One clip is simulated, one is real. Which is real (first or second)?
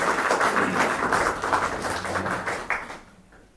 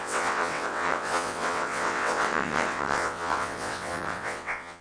first